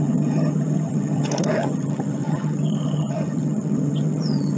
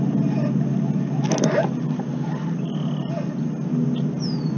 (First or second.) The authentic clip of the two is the second